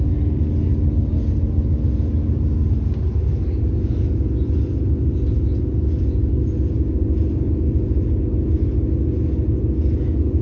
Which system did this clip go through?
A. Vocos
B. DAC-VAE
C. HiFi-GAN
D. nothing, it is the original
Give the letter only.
D